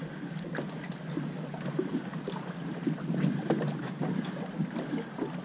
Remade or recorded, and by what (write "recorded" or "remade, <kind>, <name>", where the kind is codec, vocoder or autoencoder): recorded